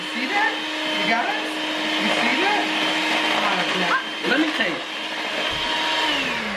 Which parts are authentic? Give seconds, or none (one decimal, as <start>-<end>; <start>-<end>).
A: 0.0-6.6